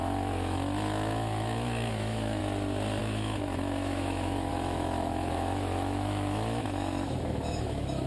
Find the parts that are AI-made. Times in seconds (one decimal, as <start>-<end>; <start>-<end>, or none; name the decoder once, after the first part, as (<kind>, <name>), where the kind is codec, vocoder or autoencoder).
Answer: 0.0-2.4 (autoencoder, DAC-VAE); 3.0-8.1